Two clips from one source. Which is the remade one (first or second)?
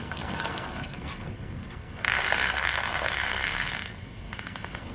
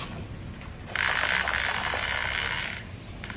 first